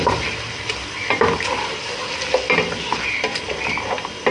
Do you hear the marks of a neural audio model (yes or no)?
no